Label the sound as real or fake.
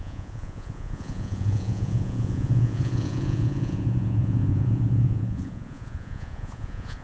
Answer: fake